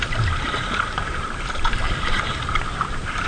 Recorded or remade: remade